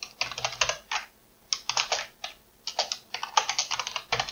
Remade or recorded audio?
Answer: recorded